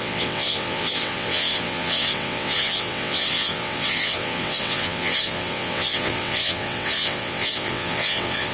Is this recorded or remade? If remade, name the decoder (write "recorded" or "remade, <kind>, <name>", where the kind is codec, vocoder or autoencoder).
remade, vocoder, WaveNeXt